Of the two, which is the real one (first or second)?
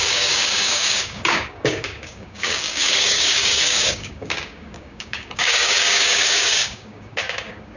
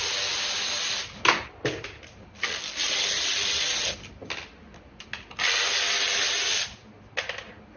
second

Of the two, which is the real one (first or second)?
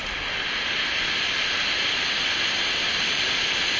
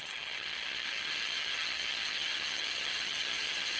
first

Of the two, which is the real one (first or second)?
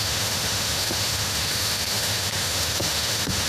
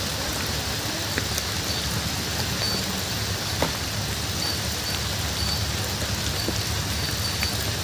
second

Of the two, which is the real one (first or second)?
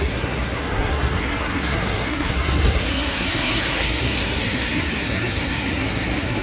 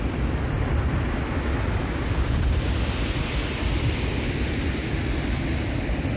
second